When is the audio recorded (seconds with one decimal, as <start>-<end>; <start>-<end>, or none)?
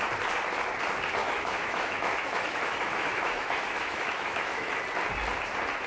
0.0-1.2; 4.7-5.9